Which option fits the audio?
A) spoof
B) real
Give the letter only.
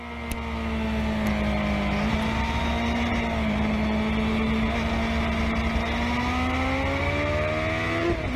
B